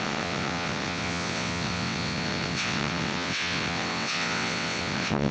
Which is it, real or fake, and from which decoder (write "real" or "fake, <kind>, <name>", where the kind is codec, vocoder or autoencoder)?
fake, vocoder, WaveNeXt